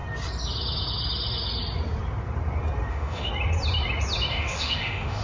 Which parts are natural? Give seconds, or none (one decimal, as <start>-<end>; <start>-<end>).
0.0-2.9; 3.3-4.3